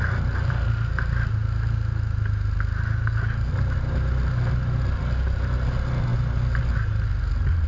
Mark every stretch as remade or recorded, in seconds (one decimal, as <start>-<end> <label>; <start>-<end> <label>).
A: 0.0-7.7 recorded